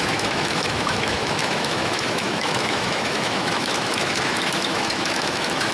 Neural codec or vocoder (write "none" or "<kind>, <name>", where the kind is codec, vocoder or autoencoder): autoencoder, DAC-VAE